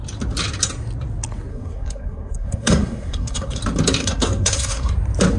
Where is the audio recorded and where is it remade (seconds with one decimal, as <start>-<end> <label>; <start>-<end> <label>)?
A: 0.0-1.5 recorded; 1.5-3.6 remade; 3.6-4.0 recorded; 4.0-4.9 remade; 4.9-5.4 recorded

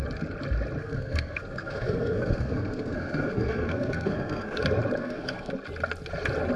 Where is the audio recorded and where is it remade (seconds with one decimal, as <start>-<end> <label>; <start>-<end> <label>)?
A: 0.0-0.8 recorded; 0.8-4.6 remade; 4.6-5.0 recorded; 5.0-5.5 remade; 5.5-6.6 recorded

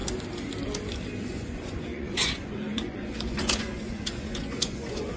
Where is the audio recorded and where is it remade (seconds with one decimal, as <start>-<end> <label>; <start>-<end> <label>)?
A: 0.0-1.2 recorded; 1.2-5.2 remade

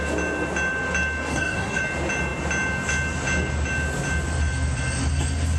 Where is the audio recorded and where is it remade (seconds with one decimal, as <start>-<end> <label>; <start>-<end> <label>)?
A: 0.0-1.3 recorded; 1.3-1.8 remade; 1.8-5.6 recorded

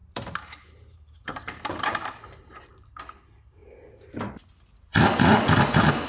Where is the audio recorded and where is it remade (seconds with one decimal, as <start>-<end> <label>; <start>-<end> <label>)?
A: 0.0-3.0 remade; 3.0-6.1 recorded

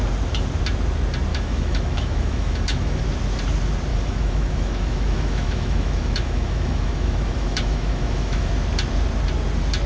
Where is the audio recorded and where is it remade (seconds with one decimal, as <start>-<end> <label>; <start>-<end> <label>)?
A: 0.0-1.3 recorded; 1.3-3.0 remade; 3.0-3.9 recorded; 3.9-8.5 remade; 8.5-9.9 recorded

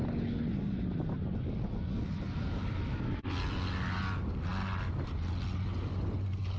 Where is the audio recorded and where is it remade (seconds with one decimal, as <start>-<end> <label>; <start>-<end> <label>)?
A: 0.0-6.6 recorded

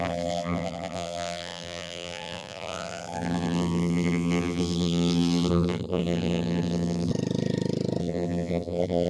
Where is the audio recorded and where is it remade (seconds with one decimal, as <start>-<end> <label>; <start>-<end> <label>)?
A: 0.0-7.1 remade; 7.1-8.0 recorded; 8.0-9.1 remade